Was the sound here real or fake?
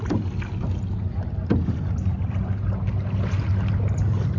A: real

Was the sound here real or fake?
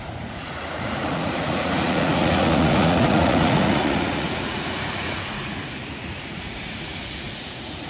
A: fake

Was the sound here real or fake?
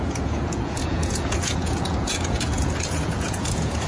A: fake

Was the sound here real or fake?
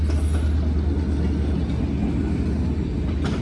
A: real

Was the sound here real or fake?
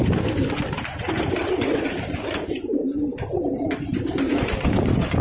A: fake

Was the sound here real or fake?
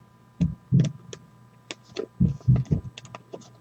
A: real